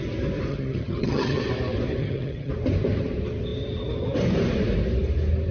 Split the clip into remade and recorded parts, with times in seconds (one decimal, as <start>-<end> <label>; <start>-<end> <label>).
0.0-0.5 recorded; 0.5-1.4 remade; 1.4-2.0 recorded; 2.0-2.5 remade; 2.5-5.5 recorded